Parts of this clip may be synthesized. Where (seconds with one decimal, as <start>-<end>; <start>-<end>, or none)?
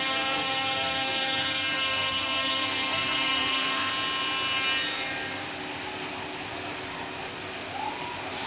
0.0-3.9